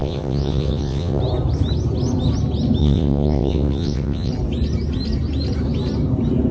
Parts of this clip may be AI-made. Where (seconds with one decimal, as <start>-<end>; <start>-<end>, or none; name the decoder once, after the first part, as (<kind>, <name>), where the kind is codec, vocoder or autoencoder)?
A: 0.0-1.2 (vocoder, WaveNeXt); 2.8-4.3